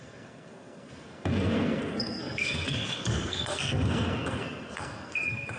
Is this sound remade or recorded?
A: remade